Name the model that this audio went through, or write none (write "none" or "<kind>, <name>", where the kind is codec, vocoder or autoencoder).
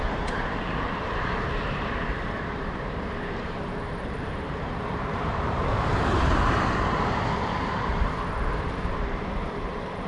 vocoder, BigVGAN v2